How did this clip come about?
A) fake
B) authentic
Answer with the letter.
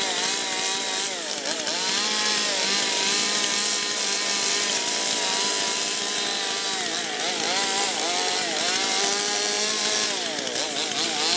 B